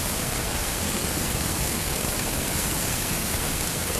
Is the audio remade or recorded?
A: remade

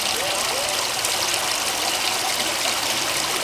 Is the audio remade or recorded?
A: recorded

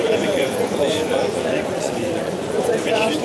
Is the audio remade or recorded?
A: remade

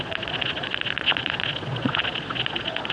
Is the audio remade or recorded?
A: remade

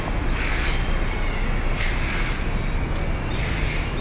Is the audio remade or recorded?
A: recorded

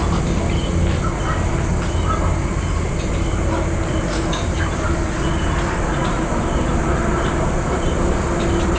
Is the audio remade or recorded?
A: recorded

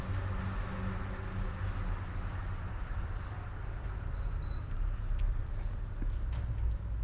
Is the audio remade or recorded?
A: recorded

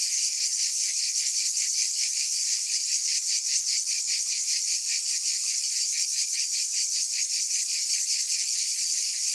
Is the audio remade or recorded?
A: remade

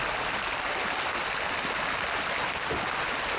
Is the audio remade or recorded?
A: recorded